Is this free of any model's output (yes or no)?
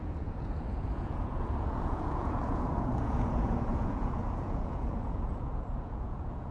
no